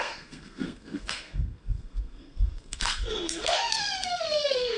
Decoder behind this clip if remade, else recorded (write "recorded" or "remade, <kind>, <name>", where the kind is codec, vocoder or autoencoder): remade, codec, SNAC